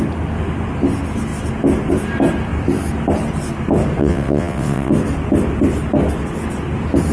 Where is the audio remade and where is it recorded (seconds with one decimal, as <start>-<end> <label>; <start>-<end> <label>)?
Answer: 0.0-4.0 recorded; 4.0-4.9 remade; 4.9-7.1 recorded